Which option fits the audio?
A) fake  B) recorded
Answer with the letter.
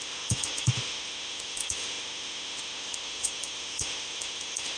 A